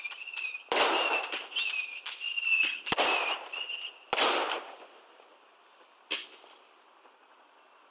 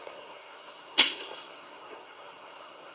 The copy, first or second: second